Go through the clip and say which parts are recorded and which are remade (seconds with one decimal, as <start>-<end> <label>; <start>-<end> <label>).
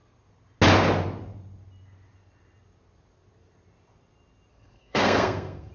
0.0-4.5 recorded; 4.5-5.7 remade